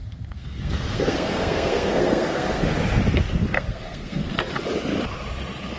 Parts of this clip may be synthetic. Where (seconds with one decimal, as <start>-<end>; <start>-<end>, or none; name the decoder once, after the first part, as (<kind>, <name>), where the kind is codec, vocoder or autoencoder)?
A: 0.0-2.6 (codec, SNAC); 3.5-4.4